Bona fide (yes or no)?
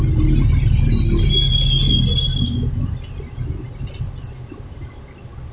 yes